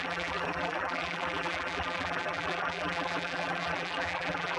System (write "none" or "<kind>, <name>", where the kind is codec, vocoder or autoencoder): vocoder, BigVGAN v2